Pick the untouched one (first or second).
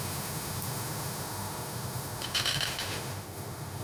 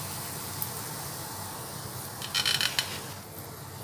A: second